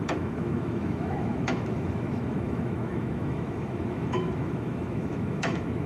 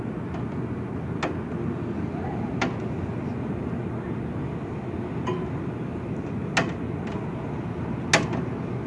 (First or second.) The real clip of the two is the second